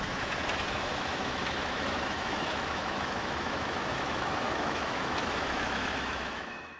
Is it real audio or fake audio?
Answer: fake